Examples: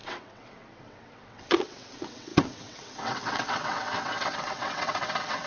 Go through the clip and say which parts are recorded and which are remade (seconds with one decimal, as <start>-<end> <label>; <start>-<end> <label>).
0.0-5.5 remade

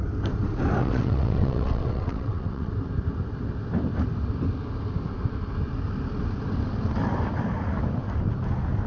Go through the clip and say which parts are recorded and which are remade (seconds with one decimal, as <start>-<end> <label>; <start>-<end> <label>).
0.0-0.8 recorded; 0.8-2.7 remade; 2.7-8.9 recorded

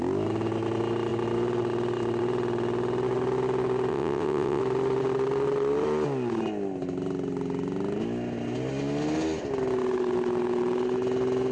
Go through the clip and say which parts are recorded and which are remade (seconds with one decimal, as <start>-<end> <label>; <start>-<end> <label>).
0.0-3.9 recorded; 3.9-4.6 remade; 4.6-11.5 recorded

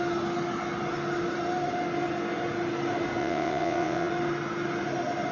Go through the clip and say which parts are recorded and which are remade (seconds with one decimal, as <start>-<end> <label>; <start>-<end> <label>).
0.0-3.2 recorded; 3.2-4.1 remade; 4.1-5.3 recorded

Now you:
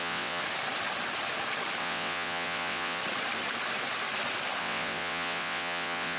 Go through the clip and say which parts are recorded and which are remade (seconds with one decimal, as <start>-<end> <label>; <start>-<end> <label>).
0.0-0.4 remade; 0.4-1.8 recorded; 1.8-3.0 remade; 3.0-4.6 recorded; 4.6-6.2 remade